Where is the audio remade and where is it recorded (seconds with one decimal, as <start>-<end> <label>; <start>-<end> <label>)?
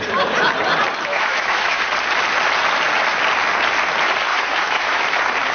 0.0-1.1 recorded; 1.1-1.8 remade; 1.8-4.3 recorded; 4.3-5.0 remade; 5.0-5.5 recorded